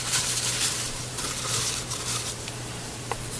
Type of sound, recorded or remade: remade